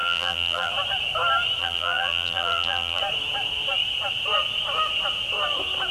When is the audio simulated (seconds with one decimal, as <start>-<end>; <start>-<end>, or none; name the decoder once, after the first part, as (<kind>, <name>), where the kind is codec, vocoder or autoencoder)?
0.0-0.7 (vocoder, BigVGAN v2); 1.6-3.0